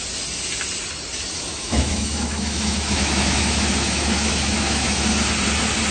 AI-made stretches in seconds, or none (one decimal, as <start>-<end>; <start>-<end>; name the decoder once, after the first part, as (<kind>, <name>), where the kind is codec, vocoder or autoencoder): 1.5-5.0 (autoencoder, DAC-VAE)